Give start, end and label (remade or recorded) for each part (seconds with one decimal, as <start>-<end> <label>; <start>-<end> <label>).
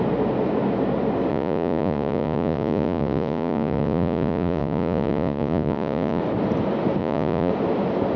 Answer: 0.0-1.3 recorded; 1.3-6.2 remade; 6.2-7.0 recorded; 7.0-7.5 remade; 7.5-8.2 recorded